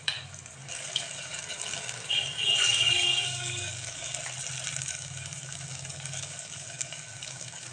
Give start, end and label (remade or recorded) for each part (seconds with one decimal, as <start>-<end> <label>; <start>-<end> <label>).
0.0-4.1 remade; 4.1-4.8 recorded; 4.8-7.7 remade